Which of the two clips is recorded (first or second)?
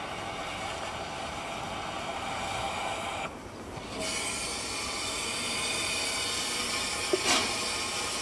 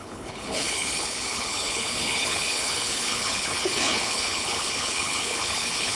first